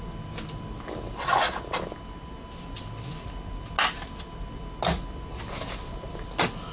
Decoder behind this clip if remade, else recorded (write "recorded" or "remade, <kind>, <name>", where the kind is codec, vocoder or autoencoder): recorded